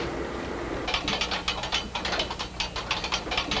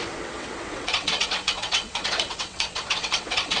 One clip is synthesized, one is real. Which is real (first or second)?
first